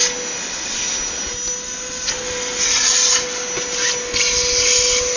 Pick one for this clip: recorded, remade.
recorded